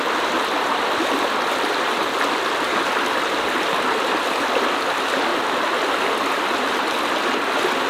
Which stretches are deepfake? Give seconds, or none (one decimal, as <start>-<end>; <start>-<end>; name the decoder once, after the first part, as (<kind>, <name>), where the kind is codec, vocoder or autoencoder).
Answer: none